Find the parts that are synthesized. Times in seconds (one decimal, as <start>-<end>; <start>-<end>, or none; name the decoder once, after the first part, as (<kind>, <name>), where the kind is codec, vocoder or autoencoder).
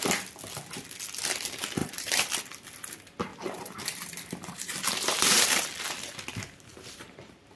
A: 1.8-2.3 (vocoder, BigVGAN v2); 3.3-5.6; 6.7-7.6